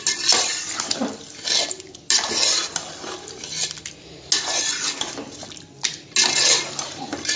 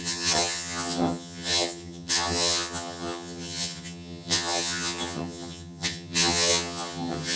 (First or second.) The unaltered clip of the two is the first